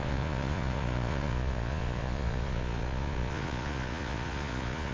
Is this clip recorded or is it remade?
remade